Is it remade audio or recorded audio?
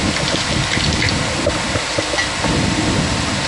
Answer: recorded